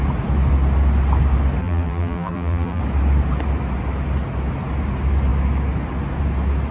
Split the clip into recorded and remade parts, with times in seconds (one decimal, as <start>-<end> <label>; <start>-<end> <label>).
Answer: 0.0-1.6 recorded; 1.6-2.8 remade; 2.8-6.7 recorded